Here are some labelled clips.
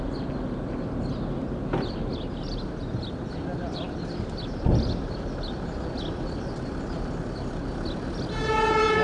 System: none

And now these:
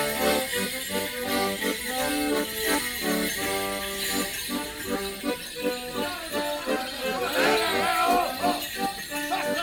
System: none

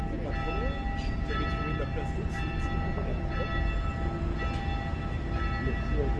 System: none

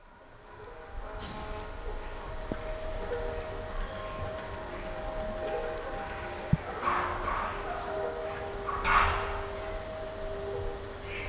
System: none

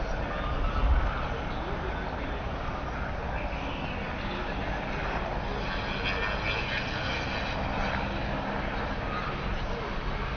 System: none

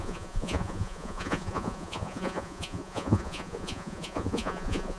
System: vocoder, Vocos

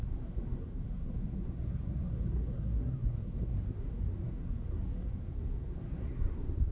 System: codec, SNAC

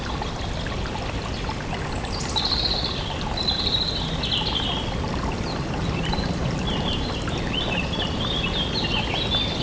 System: none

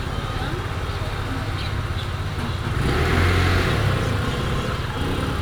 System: none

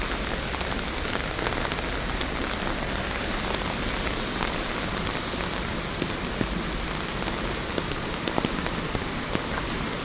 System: none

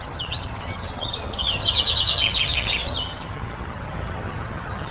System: vocoder, HiFi-GAN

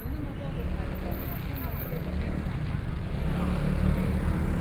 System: none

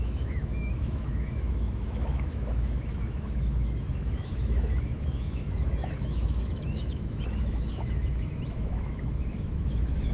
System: autoencoder, DAC-VAE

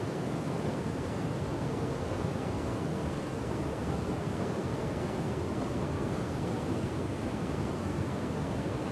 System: codec, SNAC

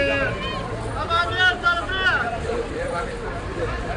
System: none